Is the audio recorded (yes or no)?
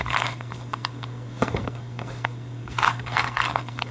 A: no